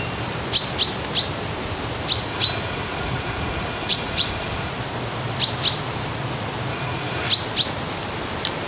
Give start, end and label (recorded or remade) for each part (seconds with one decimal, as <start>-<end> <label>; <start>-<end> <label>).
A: 0.0-2.3 recorded; 2.3-4.7 remade; 4.7-6.7 recorded; 6.7-7.3 remade; 7.3-8.7 recorded